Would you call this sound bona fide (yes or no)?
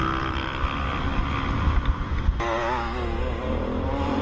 yes